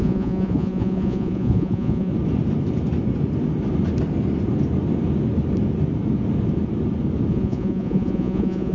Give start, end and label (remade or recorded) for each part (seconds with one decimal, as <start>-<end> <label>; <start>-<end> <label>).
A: 0.0-2.1 remade; 2.1-7.3 recorded; 7.3-8.7 remade